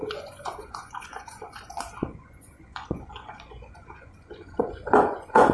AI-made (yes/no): yes